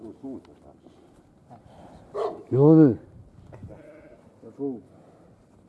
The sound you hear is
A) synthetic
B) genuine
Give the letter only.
B